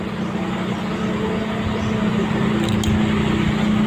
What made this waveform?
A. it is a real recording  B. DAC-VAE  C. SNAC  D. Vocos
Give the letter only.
A